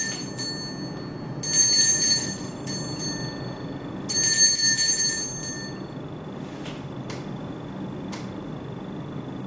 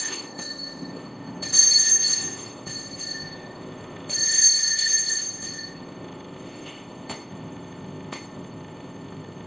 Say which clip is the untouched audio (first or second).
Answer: first